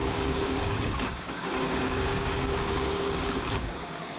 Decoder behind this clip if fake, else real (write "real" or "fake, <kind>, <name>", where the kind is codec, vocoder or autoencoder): fake, codec, DAC